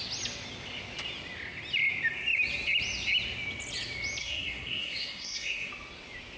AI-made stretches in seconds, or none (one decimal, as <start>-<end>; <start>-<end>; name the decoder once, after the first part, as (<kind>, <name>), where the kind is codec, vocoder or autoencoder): 4.2-5.7 (codec, SNAC)